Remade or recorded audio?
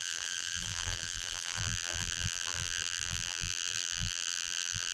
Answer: remade